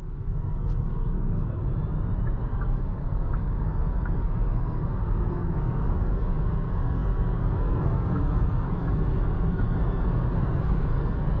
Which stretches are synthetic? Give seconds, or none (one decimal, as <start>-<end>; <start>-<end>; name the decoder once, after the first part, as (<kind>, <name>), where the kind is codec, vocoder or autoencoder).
0.0-1.6 (codec, SNAC); 2.4-11.4